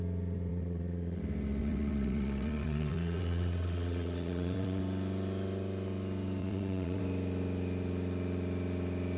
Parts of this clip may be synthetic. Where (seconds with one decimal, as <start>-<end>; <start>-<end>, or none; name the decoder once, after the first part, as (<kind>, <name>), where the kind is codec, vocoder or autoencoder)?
0.5-1.2 (vocoder, WaveNeXt); 1.6-4.8; 6.4-7.0